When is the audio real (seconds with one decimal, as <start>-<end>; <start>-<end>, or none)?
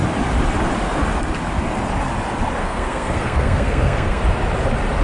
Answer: 0.0-2.6; 4.2-5.0